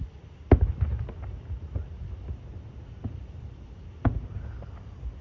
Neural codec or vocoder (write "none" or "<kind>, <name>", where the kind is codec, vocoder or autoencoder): none